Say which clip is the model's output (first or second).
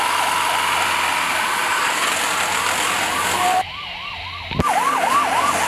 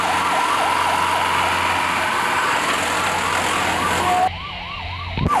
first